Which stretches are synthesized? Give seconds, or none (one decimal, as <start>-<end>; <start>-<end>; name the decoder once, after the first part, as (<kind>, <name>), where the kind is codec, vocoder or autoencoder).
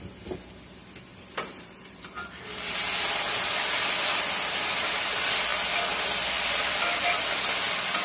1.1-4.1 (vocoder, BigVGAN v2)